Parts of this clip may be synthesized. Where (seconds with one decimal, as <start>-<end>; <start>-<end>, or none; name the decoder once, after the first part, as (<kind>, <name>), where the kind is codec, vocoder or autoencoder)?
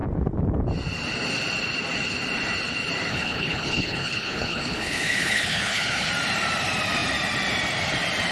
3.1-6.1 (codec, HILCodec)